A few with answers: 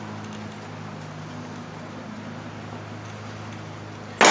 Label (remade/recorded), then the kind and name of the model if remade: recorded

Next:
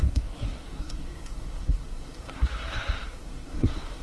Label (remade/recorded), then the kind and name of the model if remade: remade, codec, SNAC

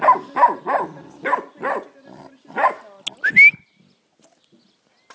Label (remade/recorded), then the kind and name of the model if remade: recorded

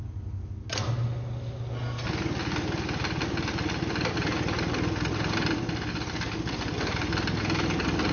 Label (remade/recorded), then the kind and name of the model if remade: recorded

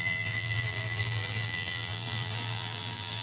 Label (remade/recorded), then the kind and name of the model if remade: remade, vocoder, BigVGAN v2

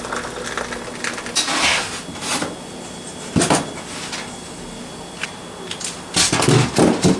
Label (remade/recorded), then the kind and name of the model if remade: recorded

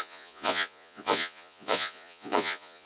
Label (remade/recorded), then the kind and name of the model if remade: remade, vocoder, Vocos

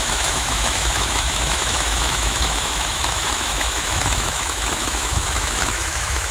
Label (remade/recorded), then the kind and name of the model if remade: remade, autoencoder, DAC-VAE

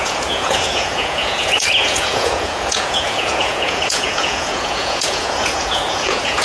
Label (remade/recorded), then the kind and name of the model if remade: remade, vocoder, Vocos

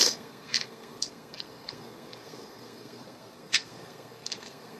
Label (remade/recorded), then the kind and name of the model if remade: remade, codec, SNAC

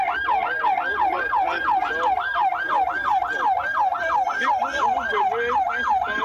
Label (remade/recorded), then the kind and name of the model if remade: recorded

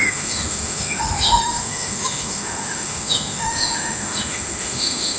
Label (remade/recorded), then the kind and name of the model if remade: remade, autoencoder, DAC-VAE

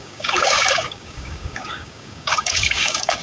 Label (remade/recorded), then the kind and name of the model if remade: remade, codec, DAC